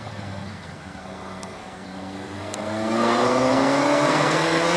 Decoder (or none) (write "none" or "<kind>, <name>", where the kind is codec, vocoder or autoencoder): codec, SNAC